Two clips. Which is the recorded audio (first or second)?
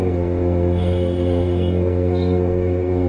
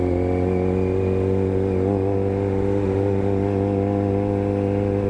second